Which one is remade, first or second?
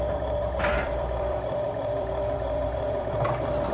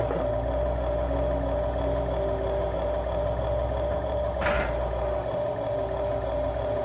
first